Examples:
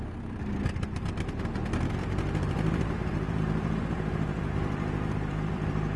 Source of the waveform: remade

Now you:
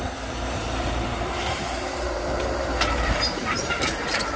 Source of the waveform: remade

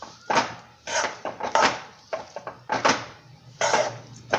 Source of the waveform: remade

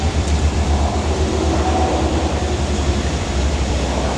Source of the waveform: remade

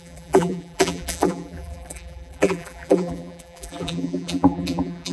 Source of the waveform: remade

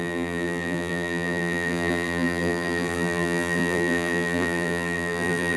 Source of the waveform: remade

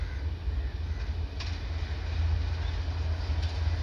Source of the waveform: recorded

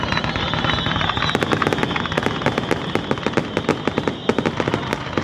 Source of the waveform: recorded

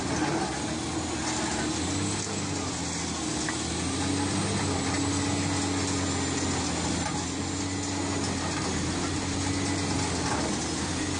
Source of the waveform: recorded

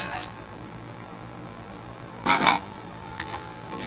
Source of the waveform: remade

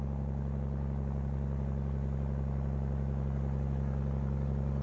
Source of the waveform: recorded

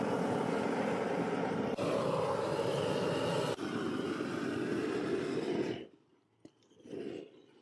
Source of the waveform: recorded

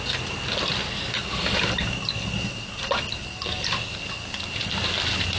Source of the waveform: recorded